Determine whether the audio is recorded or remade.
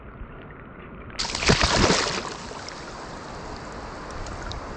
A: recorded